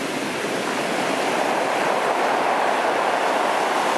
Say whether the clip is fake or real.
real